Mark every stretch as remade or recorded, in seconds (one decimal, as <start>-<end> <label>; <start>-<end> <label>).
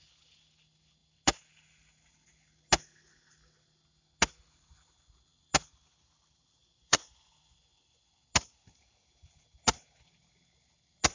0.0-6.6 recorded; 6.6-8.1 remade; 8.1-11.1 recorded